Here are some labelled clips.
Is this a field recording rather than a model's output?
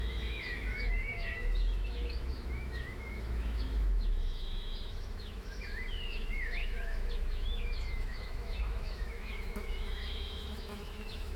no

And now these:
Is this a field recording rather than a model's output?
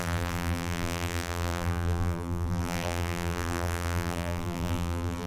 no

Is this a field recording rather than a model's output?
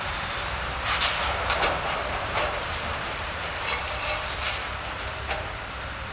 no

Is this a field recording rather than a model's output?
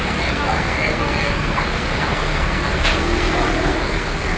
no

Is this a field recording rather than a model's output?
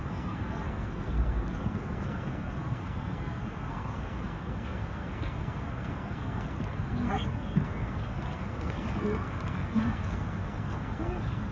no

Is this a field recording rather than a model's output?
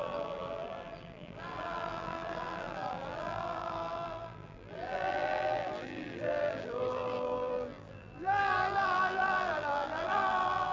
no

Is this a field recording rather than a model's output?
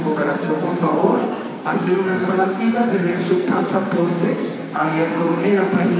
no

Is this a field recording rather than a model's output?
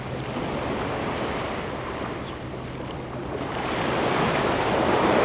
yes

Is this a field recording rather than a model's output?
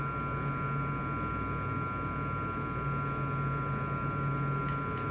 yes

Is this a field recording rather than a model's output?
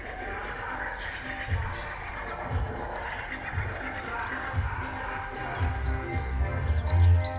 yes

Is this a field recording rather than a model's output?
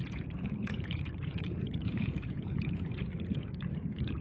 no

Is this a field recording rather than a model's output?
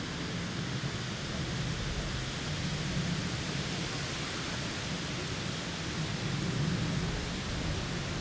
yes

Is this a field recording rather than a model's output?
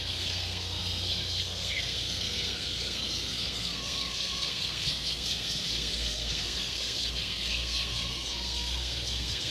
no